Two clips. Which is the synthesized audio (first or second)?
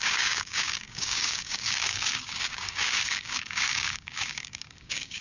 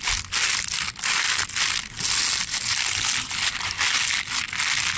first